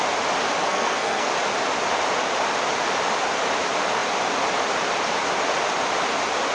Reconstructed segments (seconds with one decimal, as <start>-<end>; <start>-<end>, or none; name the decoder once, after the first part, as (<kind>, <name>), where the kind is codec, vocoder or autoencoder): 0.6-1.3 (codec, SNAC)